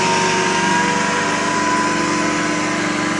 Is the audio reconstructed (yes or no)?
no